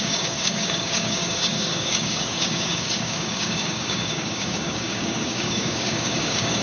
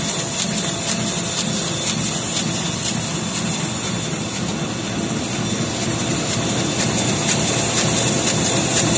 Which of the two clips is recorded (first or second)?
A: second